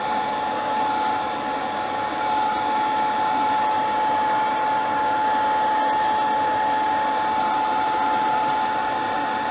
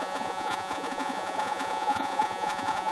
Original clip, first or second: first